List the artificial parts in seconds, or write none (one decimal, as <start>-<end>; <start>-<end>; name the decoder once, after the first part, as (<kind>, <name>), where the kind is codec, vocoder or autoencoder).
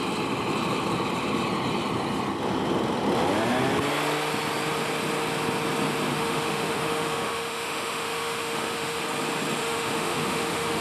6.1-9.0 (autoencoder, DAC-VAE); 9.6-10.8